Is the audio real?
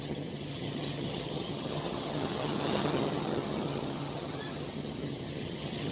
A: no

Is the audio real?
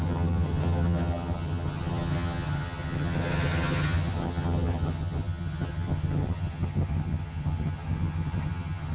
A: no